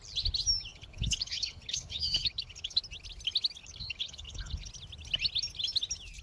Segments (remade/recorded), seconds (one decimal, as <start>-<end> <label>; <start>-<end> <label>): 0.0-0.7 recorded; 0.7-2.8 remade; 2.8-3.6 recorded; 3.6-4.7 remade; 4.7-6.2 recorded